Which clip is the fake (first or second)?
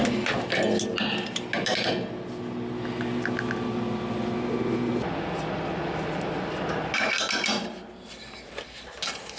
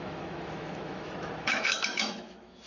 second